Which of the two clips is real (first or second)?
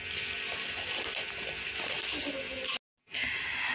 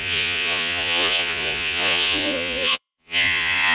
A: first